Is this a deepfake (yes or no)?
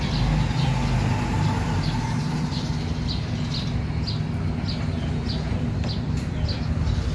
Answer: no